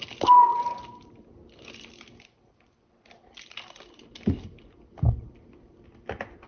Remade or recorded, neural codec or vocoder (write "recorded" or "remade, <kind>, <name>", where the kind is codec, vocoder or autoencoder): recorded